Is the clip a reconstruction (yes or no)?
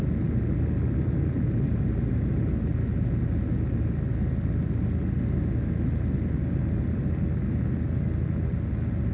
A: no